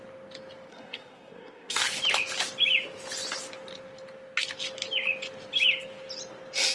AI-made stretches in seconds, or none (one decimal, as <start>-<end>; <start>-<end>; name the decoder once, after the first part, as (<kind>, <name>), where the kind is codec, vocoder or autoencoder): 0.7-1.8 (codec, SNAC)